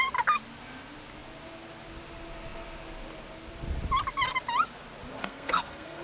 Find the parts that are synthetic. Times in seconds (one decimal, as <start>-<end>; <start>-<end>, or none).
5.2-6.0